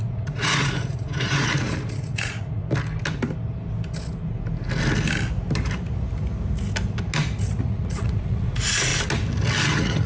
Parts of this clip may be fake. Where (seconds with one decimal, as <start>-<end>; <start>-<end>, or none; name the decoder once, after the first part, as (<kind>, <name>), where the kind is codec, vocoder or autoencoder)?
0.0-2.6 (vocoder, Vocos); 7.6-8.9; 9.7-10.1